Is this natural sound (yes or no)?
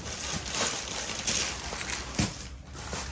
yes